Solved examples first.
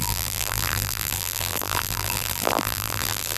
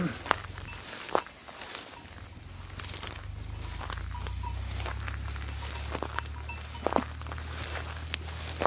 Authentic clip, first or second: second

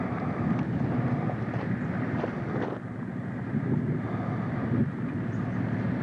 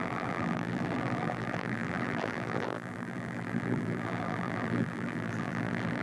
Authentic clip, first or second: first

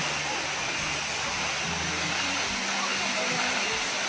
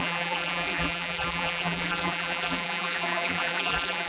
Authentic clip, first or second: first